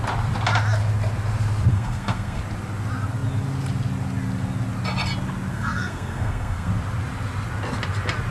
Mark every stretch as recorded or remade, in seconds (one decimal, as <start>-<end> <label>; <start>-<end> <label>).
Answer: 0.0-1.7 recorded; 1.7-2.4 remade; 2.4-5.5 recorded; 5.5-6.7 remade; 6.7-8.3 recorded